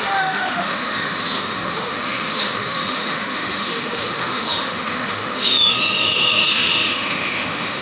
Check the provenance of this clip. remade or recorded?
remade